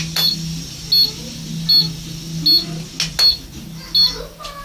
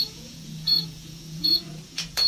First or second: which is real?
first